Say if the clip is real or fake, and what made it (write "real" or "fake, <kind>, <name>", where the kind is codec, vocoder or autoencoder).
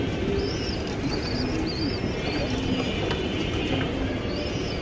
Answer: real